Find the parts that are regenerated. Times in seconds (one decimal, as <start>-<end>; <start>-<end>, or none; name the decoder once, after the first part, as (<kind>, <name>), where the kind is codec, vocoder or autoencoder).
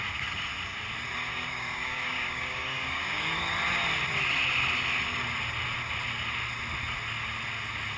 1.3-3.4 (codec, DAC)